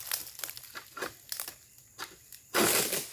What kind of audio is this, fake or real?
real